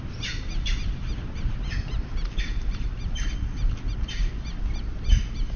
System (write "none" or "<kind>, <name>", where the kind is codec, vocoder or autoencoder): none